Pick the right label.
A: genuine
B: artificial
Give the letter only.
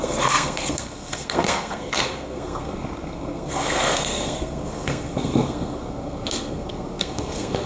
B